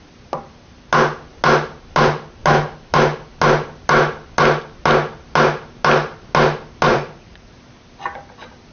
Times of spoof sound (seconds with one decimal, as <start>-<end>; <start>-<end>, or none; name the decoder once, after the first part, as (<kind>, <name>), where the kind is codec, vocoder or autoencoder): 6.9-7.5 (vocoder, Vocos)